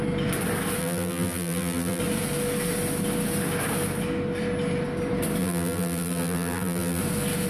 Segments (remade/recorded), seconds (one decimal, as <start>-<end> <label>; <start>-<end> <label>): 0.0-0.8 recorded; 0.8-2.0 remade; 2.0-5.4 recorded; 5.4-7.0 remade; 7.0-7.5 recorded